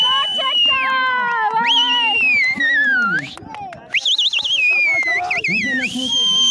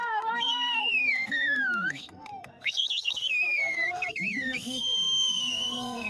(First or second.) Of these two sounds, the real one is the first